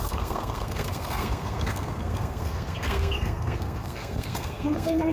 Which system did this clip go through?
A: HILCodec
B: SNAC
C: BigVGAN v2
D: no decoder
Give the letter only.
B